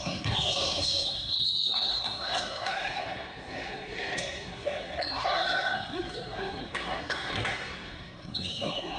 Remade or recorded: remade